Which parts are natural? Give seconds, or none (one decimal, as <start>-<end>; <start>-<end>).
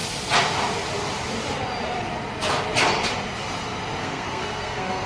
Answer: 0.0-4.0